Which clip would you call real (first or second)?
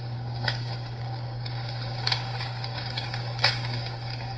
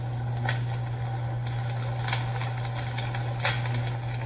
second